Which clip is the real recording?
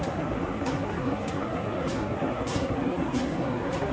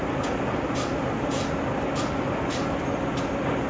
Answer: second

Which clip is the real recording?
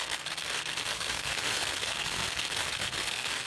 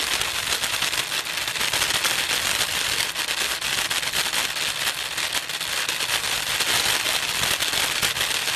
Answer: second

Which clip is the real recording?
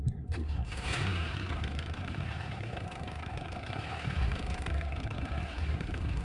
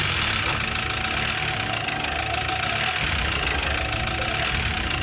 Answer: second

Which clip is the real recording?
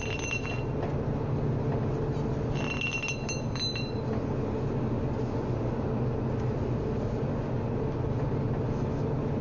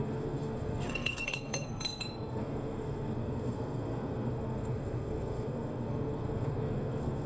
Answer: first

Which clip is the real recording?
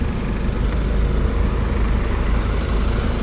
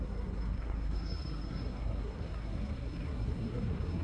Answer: first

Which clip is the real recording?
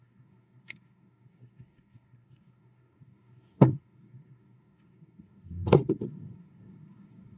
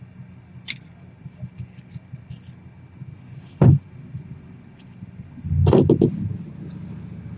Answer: second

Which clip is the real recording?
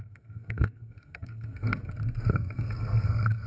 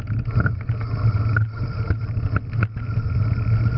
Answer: second